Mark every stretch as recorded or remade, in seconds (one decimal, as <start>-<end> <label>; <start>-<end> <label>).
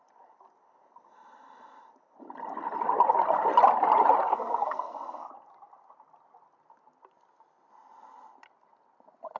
0.0-4.3 recorded; 4.3-5.3 remade; 5.3-9.4 recorded